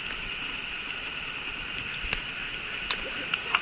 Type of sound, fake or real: real